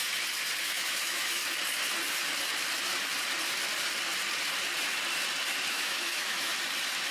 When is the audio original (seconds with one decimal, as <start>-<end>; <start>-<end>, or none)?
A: 0.0-0.6; 1.4-5.7; 6.5-7.1